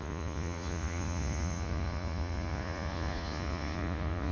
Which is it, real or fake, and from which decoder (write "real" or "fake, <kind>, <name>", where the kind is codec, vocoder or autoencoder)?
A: fake, vocoder, Vocos